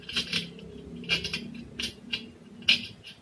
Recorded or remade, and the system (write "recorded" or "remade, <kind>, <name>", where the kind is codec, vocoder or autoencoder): recorded